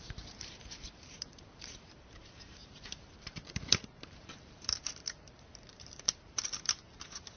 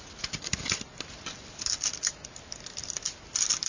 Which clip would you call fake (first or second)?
first